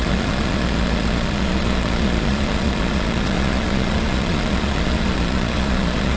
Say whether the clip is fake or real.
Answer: fake